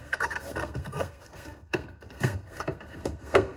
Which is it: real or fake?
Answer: fake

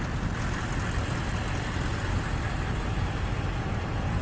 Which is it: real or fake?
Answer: real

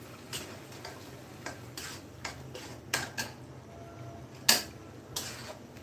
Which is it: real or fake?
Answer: real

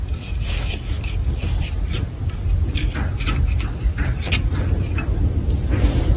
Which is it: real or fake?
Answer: real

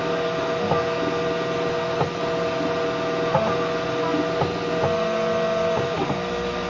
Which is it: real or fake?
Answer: real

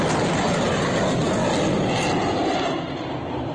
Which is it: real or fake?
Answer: real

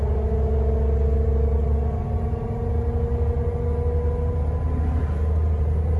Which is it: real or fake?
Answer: real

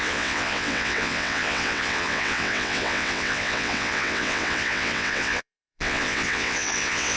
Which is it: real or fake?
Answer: fake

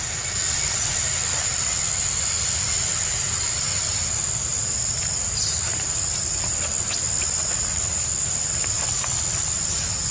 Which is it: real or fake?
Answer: real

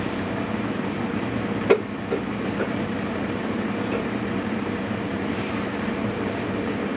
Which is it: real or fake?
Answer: fake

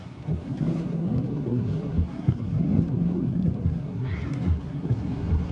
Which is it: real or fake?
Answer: fake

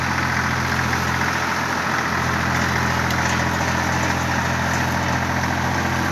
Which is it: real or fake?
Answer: real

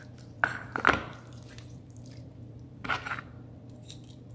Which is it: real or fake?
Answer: fake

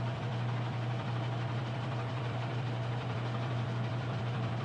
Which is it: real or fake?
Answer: fake